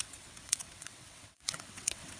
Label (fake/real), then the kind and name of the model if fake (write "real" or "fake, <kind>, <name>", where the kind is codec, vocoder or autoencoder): fake, vocoder, WaveNeXt